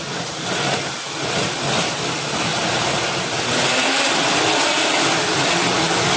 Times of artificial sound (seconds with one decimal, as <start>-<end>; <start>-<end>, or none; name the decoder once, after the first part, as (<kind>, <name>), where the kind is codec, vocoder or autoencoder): none